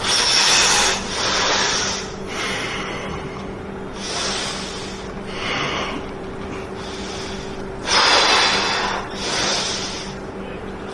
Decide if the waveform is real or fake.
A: real